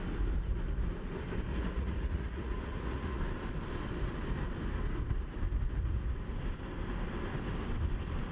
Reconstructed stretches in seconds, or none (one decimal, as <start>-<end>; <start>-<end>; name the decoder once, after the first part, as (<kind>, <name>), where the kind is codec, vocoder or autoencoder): 1.5-3.2 (vocoder, Vocos)

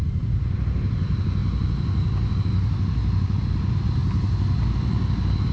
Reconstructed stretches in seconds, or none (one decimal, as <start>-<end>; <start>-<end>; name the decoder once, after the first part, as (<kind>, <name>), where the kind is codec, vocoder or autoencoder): none

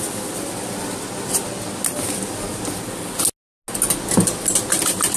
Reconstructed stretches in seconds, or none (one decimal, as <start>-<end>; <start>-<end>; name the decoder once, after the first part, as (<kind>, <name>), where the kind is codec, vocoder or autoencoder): none

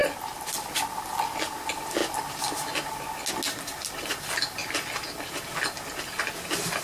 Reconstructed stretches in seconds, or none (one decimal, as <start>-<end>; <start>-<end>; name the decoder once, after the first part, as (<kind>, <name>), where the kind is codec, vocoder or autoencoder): none

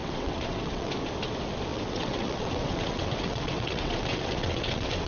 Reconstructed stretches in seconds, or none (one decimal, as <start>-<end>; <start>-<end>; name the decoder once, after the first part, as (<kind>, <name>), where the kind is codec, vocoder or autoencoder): 0.0-0.9 (vocoder, WaveNeXt); 1.7-5.1

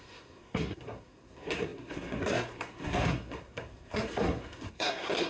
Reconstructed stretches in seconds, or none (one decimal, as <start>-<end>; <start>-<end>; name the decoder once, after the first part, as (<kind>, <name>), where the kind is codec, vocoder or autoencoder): 0.0-5.3 (codec, SNAC)

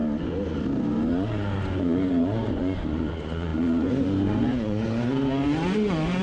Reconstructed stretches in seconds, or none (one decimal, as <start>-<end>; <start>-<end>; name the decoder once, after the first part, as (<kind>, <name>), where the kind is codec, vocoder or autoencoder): 1.1-6.2 (vocoder, Vocos)